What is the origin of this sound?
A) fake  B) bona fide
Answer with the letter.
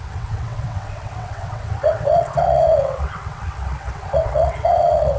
A